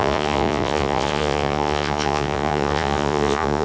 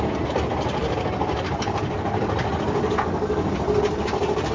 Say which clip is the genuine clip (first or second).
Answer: second